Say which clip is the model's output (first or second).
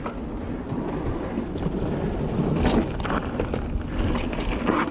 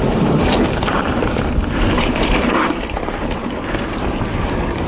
second